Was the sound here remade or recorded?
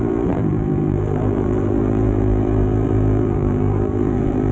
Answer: remade